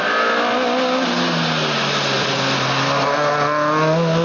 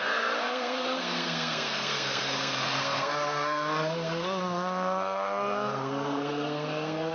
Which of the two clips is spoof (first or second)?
second